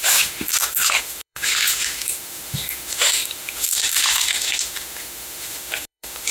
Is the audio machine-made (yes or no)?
yes